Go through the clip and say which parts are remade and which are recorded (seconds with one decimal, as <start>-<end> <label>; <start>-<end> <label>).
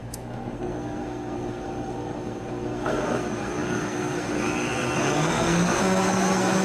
0.0-6.6 remade